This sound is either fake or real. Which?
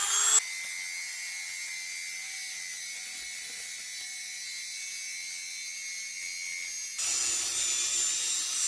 real